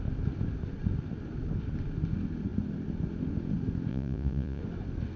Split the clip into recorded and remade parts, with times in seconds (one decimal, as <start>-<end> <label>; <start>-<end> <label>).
0.0-3.9 recorded; 3.9-4.6 remade; 4.6-5.2 recorded